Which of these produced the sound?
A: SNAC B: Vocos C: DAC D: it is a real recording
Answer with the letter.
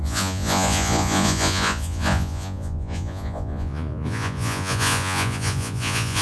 B